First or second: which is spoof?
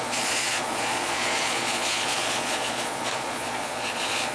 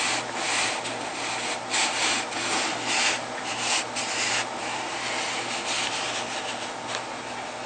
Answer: first